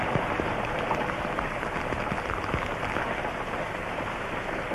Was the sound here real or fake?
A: real